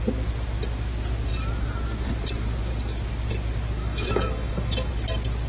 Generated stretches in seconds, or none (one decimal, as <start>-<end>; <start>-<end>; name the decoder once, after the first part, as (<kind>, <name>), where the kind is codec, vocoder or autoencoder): 3.8-4.9 (autoencoder, DAC-VAE)